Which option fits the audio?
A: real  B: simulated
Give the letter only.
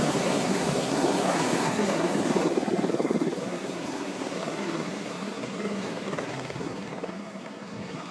B